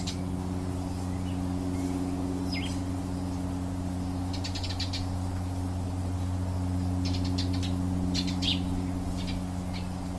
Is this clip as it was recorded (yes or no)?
yes